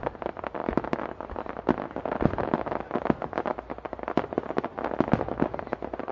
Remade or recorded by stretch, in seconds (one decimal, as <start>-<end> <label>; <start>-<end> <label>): 0.0-6.1 recorded